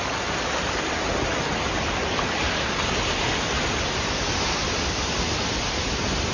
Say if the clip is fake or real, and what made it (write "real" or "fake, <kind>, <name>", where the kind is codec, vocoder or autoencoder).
real